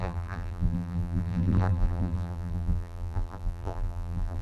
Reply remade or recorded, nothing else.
remade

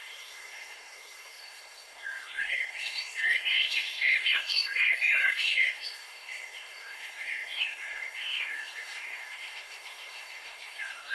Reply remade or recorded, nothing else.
remade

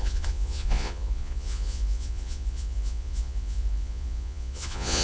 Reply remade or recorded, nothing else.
remade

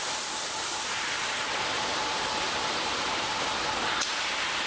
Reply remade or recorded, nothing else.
remade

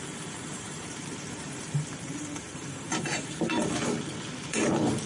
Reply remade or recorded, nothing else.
remade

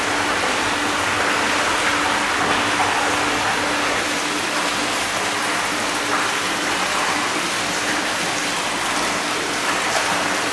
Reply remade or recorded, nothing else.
recorded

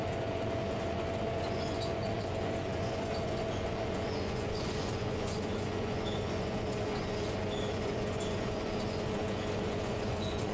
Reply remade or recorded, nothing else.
remade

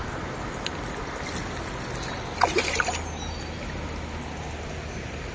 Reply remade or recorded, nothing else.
recorded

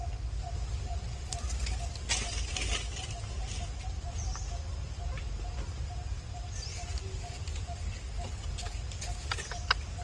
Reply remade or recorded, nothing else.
recorded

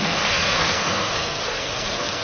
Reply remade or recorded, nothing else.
remade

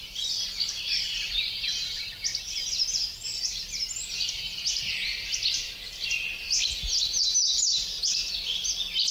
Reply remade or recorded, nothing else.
recorded